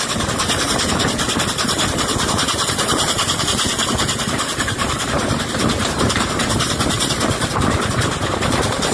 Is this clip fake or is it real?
fake